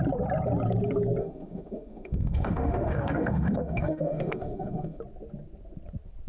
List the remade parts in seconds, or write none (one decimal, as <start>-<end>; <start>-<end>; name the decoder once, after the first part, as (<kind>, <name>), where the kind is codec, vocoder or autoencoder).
1.2-5.0 (autoencoder, DAC-VAE)